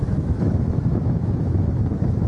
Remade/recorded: remade